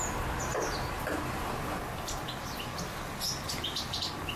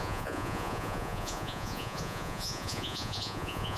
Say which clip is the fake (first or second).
second